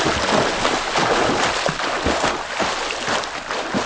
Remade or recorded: recorded